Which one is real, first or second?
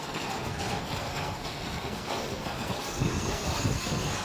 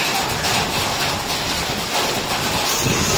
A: second